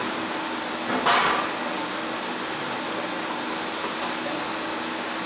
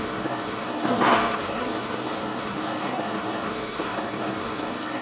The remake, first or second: second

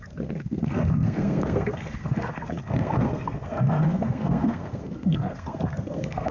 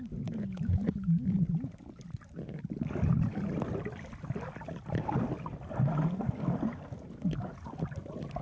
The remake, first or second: first